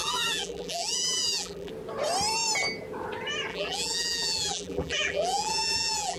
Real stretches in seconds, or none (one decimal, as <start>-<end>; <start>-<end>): 1.7-3.5